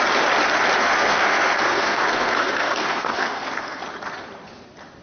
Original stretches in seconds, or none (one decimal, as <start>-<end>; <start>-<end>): 0.0-0.8; 3.8-5.0